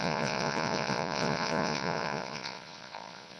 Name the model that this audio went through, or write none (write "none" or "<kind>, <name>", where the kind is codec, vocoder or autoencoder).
vocoder, Vocos